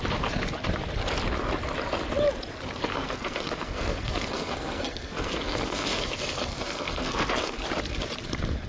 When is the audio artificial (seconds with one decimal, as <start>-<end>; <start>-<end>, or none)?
2.9-7.6